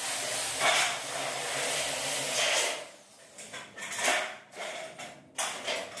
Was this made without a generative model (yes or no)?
yes